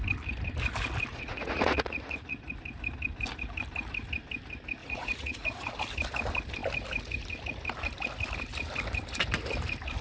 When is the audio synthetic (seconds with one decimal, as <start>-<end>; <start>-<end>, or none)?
1.1-2.5; 4.8-5.7